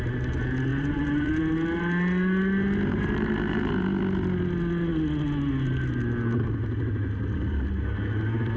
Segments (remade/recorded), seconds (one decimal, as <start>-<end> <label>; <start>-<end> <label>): 0.0-0.7 recorded; 0.7-1.4 remade; 1.4-2.9 recorded; 2.9-3.7 remade; 3.7-8.6 recorded